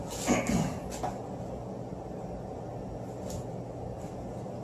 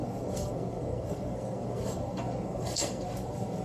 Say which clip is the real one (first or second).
first